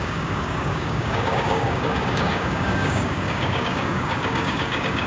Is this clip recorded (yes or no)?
no